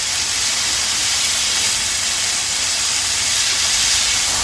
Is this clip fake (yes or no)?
no